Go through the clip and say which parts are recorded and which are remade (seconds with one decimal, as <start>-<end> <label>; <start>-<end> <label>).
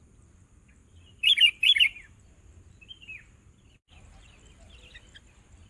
0.0-0.8 recorded; 0.8-4.2 remade; 4.2-5.7 recorded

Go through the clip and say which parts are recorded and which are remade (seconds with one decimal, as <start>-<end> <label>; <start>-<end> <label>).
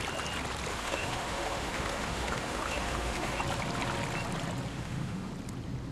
0.0-0.7 recorded; 0.7-3.4 remade; 3.4-4.7 recorded; 4.7-5.3 remade; 5.3-5.9 recorded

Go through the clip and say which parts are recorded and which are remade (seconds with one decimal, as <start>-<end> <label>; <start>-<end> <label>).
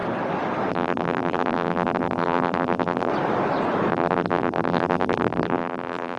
0.0-0.7 recorded; 0.7-3.1 remade; 3.1-3.9 recorded; 3.9-6.2 remade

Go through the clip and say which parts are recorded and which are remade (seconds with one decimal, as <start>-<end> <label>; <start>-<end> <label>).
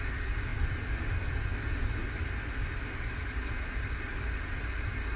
0.0-5.2 recorded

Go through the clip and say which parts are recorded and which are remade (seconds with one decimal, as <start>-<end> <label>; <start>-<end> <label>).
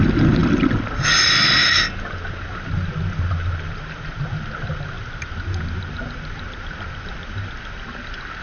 0.0-8.4 recorded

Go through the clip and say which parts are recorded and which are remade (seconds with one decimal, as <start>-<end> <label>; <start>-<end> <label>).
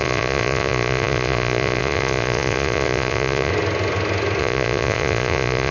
0.0-3.5 remade; 3.5-4.4 recorded; 4.4-5.7 remade